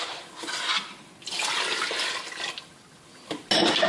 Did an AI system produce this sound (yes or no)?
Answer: no